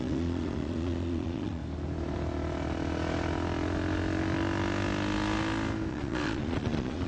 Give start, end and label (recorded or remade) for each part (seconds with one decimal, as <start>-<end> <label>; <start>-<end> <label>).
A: 0.0-1.6 remade; 1.6-5.9 recorded; 5.9-7.1 remade